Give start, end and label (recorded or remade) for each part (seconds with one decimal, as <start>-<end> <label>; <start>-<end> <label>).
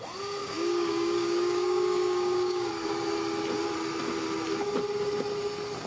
0.0-0.4 recorded; 0.4-2.7 remade; 2.7-5.9 recorded